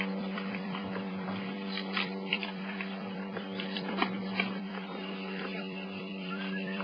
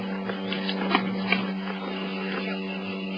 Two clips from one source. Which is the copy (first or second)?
first